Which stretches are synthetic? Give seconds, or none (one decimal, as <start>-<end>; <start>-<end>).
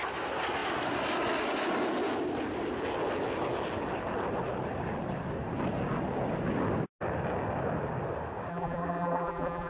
8.5-9.7